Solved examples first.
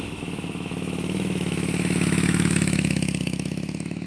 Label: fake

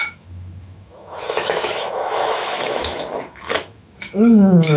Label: fake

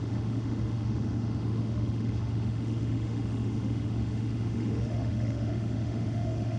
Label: fake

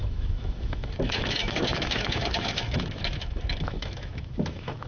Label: fake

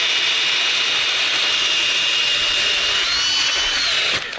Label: real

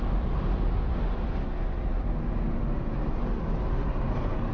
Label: real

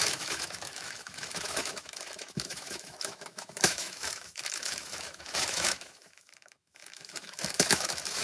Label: fake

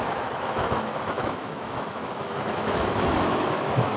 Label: fake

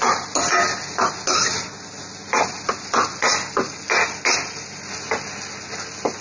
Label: real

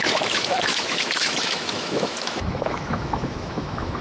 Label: fake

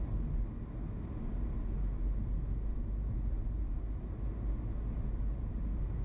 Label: real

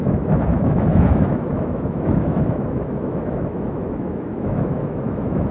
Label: fake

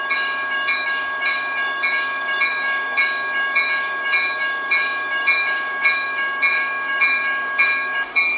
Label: fake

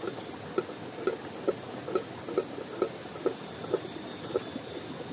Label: real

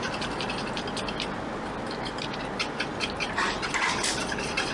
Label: real